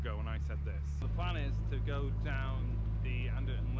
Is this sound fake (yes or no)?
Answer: no